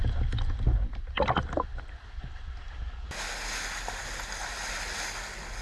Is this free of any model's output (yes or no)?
yes